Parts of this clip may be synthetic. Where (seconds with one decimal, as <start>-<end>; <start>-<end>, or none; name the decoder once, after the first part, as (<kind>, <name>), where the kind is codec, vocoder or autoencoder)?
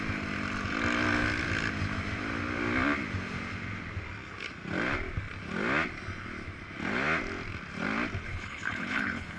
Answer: 8.2-9.4 (codec, HILCodec)